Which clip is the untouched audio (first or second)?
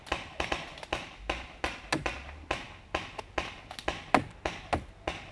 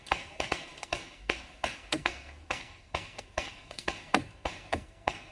first